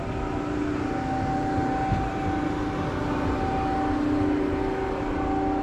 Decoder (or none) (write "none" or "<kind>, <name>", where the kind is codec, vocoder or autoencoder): none